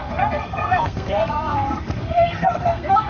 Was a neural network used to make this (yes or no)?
yes